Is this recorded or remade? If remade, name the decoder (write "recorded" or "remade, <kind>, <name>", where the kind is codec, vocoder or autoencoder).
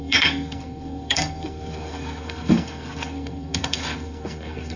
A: remade, codec, SNAC